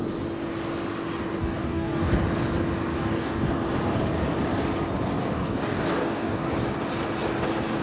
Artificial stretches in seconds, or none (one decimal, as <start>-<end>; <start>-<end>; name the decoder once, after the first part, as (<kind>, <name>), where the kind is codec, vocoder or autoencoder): 1.4-2.1 (codec, DAC); 2.9-3.5; 5.2-6.5